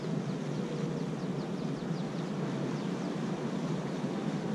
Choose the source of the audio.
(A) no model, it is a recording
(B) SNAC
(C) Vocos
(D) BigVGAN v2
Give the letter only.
A